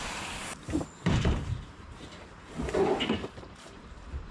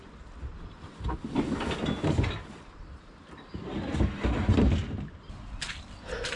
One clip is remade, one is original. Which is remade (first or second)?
first